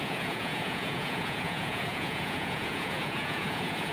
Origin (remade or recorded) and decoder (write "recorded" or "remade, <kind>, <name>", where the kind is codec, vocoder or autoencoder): remade, vocoder, Vocos